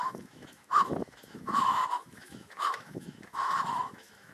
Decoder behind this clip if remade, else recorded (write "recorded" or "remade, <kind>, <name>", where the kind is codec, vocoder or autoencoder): remade, autoencoder, DAC-VAE